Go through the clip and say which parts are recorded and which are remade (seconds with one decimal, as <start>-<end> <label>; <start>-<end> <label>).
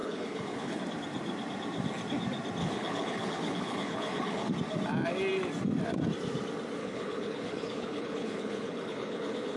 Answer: 0.0-0.8 remade; 0.8-2.6 recorded; 2.6-4.5 remade; 4.5-6.8 recorded; 6.8-9.6 remade